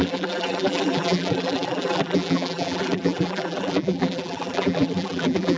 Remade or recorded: remade